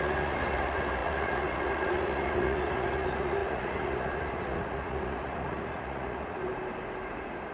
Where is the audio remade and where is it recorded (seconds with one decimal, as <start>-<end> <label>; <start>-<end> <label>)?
0.0-6.5 remade; 6.5-7.5 recorded